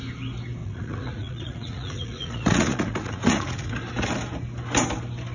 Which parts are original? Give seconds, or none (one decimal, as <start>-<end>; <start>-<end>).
0.0-0.6; 3.8-5.3